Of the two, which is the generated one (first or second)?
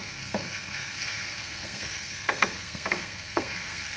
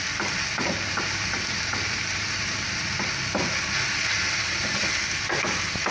first